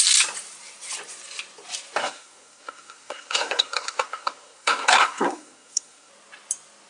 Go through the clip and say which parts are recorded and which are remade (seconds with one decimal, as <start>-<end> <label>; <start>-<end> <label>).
0.0-2.0 recorded; 2.0-6.1 remade; 6.1-6.9 recorded